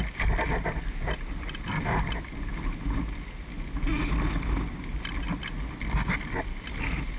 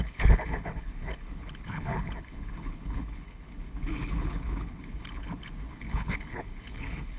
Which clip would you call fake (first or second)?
second